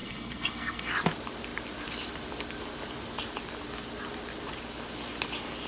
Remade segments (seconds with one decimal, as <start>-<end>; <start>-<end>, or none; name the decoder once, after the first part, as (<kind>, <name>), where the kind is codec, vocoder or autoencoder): 0.0-0.9 (codec, SNAC)